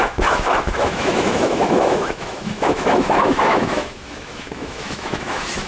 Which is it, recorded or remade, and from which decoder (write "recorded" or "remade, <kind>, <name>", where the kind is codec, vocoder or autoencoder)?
remade, autoencoder, DAC-VAE